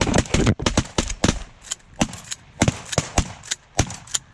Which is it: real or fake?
real